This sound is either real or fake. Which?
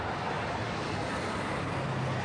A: real